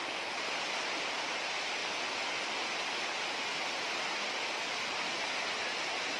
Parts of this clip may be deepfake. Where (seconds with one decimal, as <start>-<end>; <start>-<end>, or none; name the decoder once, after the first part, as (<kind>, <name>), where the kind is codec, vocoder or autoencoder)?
0.0-1.0 (vocoder, BigVGAN v2)